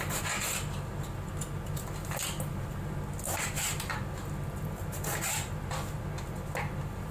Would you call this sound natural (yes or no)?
yes